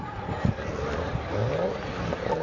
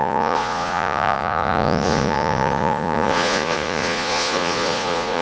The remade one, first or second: second